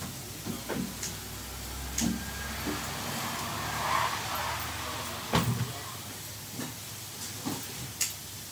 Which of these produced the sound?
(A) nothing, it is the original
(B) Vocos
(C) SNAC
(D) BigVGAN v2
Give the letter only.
A